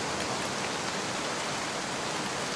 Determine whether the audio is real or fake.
real